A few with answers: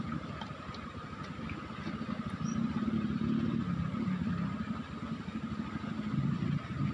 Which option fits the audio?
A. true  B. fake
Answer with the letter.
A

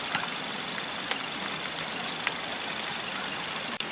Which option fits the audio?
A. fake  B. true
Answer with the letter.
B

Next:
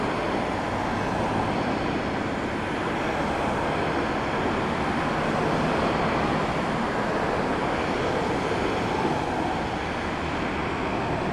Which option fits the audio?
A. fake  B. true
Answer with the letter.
B